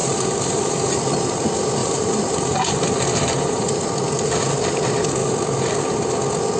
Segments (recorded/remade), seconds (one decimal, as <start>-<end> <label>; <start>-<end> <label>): 0.0-1.8 recorded; 1.8-3.7 remade; 3.7-6.6 recorded